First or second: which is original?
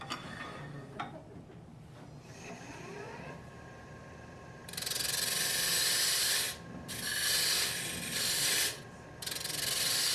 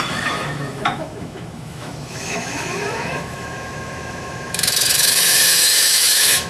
first